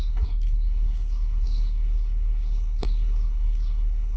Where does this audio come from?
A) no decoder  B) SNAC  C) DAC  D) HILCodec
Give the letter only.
B